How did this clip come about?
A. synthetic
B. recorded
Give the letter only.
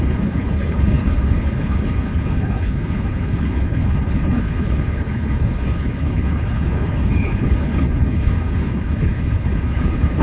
A